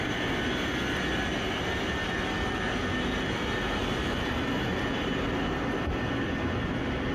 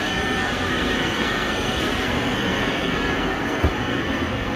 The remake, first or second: second